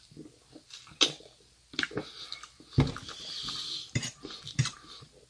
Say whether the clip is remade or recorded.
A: recorded